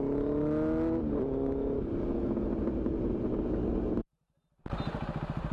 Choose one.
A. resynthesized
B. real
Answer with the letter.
B